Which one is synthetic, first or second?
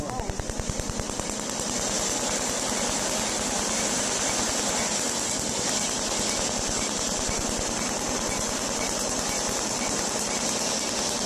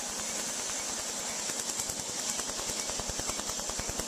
first